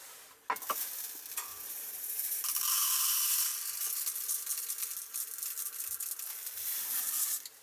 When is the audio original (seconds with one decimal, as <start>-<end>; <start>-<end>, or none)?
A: 0.0-1.5; 3.1-7.6